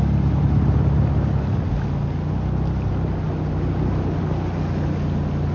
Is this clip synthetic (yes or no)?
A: no